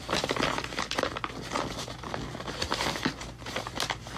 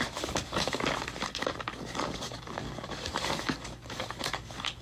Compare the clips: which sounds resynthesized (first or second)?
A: second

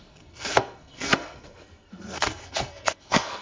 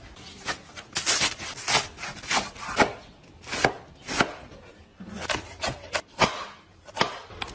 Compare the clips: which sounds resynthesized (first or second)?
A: first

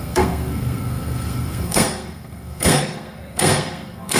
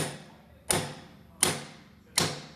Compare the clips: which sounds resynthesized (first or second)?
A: first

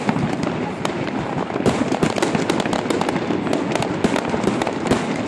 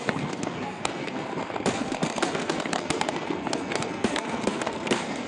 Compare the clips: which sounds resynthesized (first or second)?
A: second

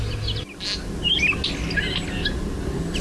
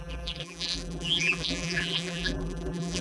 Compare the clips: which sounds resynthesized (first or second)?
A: second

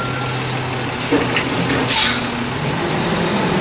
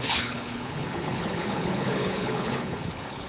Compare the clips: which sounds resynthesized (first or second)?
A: second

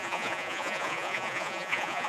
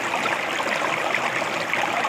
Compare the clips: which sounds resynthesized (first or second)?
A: first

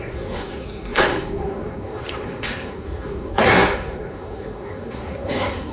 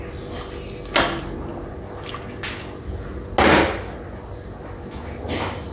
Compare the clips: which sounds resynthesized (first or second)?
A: first